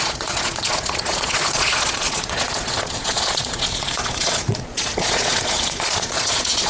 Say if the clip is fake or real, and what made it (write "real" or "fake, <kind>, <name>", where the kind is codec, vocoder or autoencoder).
fake, vocoder, Vocos